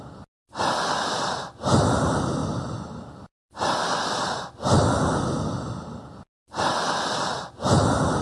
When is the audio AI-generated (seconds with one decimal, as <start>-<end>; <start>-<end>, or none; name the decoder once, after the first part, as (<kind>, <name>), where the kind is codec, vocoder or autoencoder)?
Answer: none